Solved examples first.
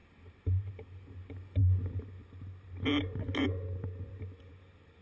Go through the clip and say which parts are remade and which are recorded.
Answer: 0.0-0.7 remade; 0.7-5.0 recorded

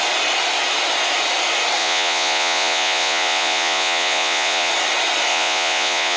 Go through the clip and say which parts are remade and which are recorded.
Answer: 0.0-1.8 recorded; 1.8-4.7 remade; 4.7-5.3 recorded; 5.3-6.2 remade